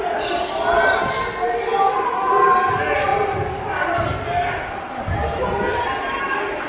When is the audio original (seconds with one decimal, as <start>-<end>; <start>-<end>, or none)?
0.0-6.7